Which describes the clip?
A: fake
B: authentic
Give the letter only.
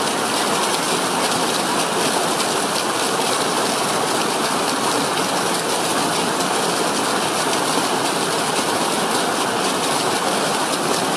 B